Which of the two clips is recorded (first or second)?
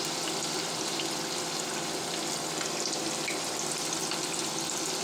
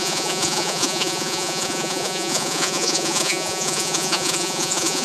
first